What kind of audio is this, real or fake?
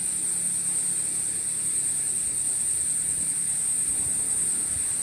real